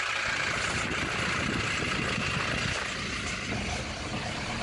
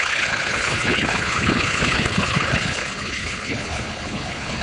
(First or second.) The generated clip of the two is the second